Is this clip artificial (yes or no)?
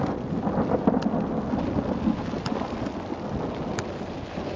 no